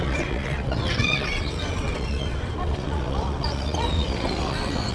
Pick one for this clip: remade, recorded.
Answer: remade